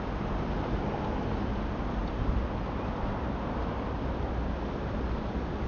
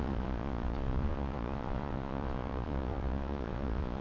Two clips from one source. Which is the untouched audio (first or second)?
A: first